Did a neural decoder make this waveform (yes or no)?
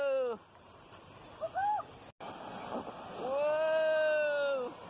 no